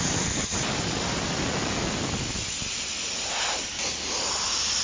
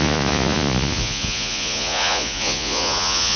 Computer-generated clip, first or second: second